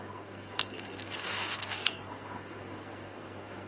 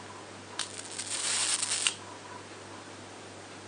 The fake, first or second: first